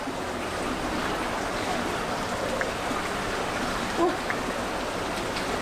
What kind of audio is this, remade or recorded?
recorded